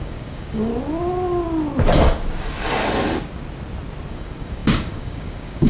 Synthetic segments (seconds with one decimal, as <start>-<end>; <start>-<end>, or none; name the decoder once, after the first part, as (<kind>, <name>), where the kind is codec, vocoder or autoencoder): 0.0-0.7 (codec, DAC); 4.1-5.7